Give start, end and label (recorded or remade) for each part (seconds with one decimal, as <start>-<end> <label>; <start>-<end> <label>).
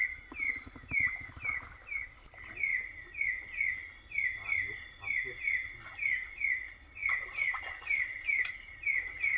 0.0-9.4 recorded